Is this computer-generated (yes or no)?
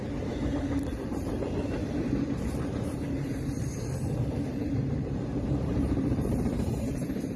yes